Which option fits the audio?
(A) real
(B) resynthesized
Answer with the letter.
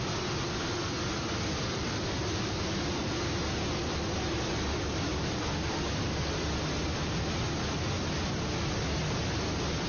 A